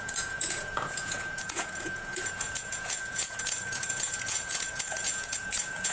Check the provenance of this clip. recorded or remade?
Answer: remade